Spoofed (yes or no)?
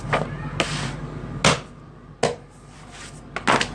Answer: no